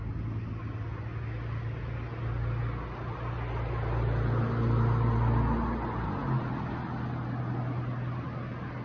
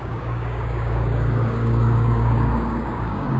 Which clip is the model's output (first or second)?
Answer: second